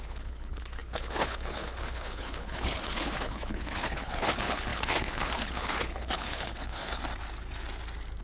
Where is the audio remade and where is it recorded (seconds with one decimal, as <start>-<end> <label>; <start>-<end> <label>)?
0.0-7.0 remade; 7.0-8.2 recorded